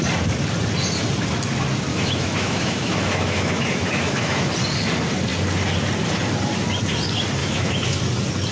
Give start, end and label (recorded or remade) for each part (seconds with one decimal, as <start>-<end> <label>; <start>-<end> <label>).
0.0-1.9 recorded; 1.9-4.5 remade; 4.5-7.4 recorded; 7.4-8.0 remade; 8.0-8.5 recorded